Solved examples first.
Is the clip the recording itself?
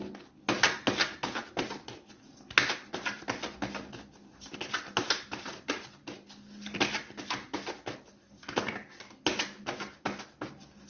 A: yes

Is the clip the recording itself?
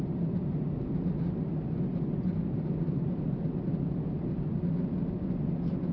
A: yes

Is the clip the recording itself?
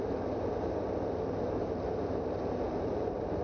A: yes